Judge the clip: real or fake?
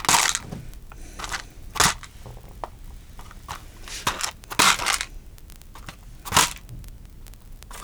real